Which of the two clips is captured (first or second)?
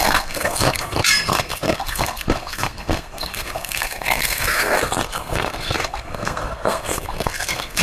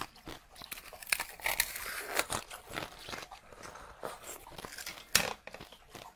second